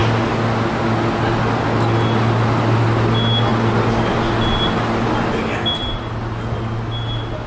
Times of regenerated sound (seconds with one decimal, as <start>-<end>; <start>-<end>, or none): none